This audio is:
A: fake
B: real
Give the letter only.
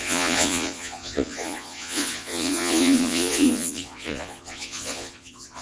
A